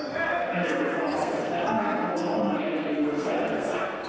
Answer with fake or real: fake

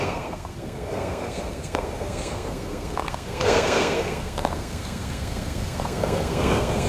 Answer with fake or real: fake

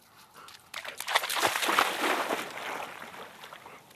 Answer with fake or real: real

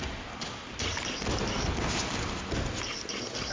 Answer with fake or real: real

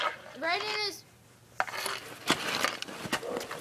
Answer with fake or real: real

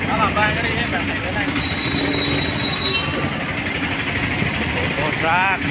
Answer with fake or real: real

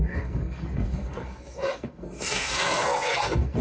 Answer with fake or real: fake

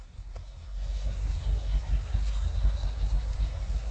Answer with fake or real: fake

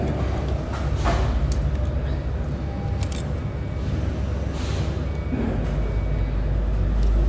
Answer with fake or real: real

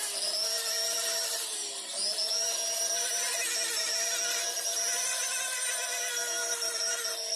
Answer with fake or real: real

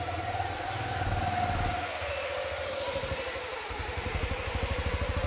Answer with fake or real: real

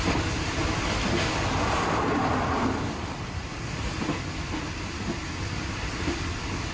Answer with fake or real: real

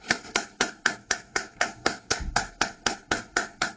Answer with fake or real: fake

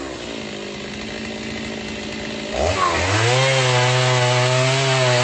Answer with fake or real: real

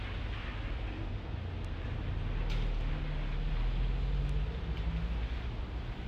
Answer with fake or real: real